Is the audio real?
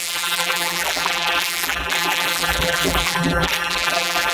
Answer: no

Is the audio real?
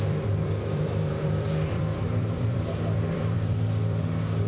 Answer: no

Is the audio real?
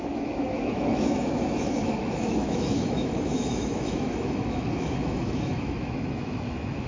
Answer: no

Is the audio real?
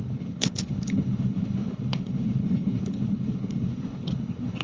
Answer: no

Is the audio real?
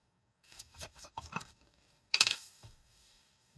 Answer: no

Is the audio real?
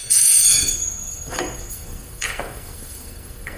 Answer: no